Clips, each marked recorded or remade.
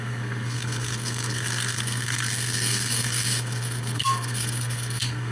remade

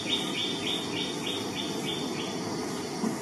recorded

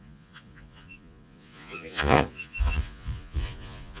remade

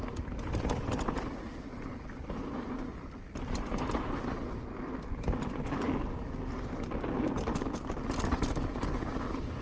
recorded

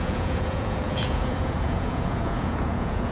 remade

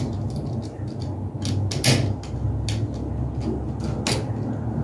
recorded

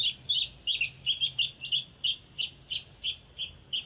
recorded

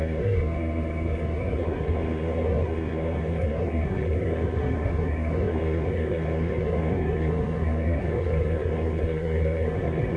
remade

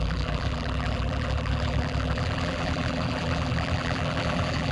remade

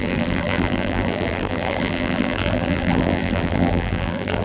remade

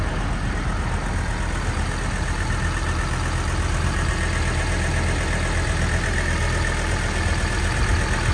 recorded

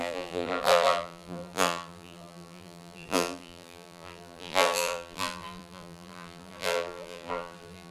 remade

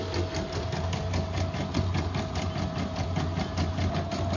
recorded